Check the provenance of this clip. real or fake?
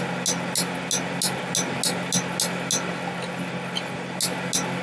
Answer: real